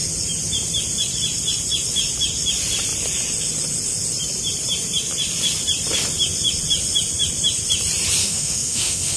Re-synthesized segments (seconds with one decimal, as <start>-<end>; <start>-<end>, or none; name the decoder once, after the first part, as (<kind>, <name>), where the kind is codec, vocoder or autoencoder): 8.2-9.2 (autoencoder, DAC-VAE)